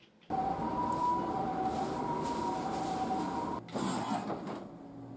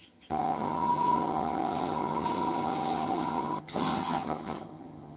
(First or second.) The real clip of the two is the first